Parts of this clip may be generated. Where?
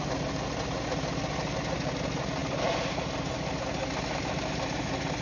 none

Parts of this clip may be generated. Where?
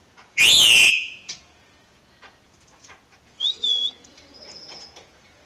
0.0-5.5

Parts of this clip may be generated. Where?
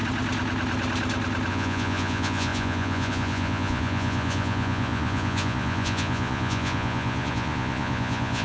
1.5-8.4